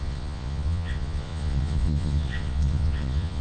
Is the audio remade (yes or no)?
yes